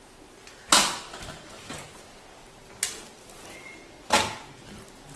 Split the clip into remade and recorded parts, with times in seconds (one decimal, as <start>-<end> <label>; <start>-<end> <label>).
0.0-0.7 recorded; 0.7-2.2 remade; 2.2-5.2 recorded